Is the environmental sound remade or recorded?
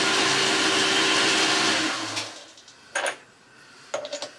recorded